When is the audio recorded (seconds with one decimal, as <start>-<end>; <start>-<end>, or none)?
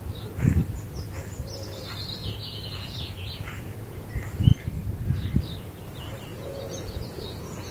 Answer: 0.0-2.2; 4.1-6.3